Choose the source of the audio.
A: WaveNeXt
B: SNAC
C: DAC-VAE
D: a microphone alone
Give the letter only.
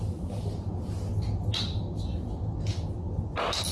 D